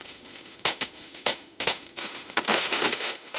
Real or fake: fake